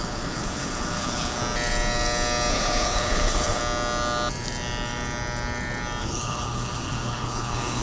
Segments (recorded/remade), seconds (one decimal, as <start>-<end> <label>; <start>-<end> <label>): 0.0-1.4 remade; 1.4-2.5 recorded; 2.5-3.6 remade; 3.6-6.0 recorded; 6.0-7.8 remade